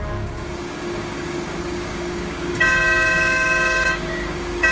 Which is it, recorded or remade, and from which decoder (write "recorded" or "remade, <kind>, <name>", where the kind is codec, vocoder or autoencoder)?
remade, codec, DAC